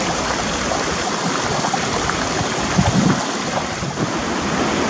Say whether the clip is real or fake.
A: real